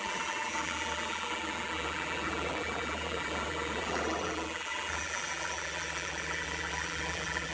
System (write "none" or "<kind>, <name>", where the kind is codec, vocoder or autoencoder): vocoder, BigVGAN v2